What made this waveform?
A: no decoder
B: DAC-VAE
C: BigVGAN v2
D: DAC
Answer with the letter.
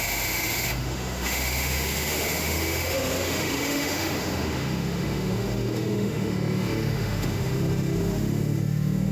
B